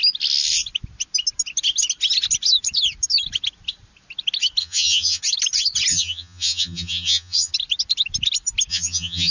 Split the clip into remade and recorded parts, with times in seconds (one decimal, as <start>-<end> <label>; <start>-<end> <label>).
0.0-4.6 recorded; 4.6-5.2 remade; 5.2-5.9 recorded; 5.9-7.5 remade; 7.5-8.7 recorded; 8.7-9.3 remade